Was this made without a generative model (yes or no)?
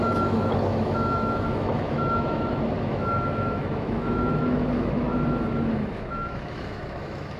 no